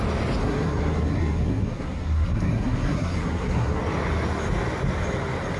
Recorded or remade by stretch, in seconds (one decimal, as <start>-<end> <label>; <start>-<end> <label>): 0.0-0.4 recorded; 0.4-3.8 remade; 3.8-5.6 recorded

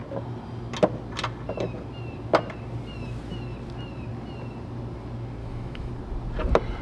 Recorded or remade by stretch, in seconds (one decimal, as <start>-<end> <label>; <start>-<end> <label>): 0.0-5.4 recorded; 5.4-5.9 remade; 5.9-6.8 recorded

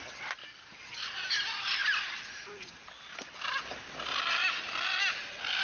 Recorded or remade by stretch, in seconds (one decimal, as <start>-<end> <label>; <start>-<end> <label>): 0.0-5.6 recorded

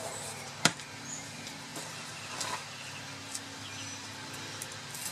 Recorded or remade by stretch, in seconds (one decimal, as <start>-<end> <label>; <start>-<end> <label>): 0.0-5.1 recorded

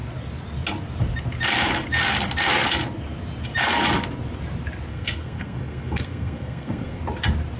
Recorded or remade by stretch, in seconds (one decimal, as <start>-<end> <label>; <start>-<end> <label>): 0.0-4.9 recorded; 4.9-7.0 remade; 7.0-7.6 recorded

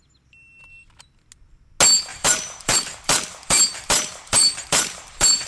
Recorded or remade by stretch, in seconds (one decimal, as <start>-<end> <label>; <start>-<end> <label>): 0.0-2.1 recorded; 2.1-5.5 remade

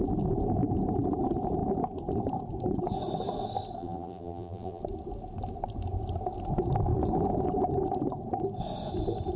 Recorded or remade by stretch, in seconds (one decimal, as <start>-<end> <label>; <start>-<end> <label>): 0.0-3.8 recorded; 3.8-4.8 remade; 4.8-9.4 recorded